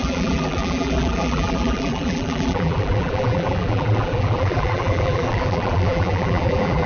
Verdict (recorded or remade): remade